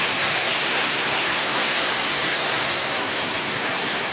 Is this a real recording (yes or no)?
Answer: no